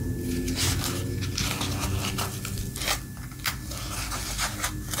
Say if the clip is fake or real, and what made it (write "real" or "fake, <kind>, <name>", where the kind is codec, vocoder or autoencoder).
real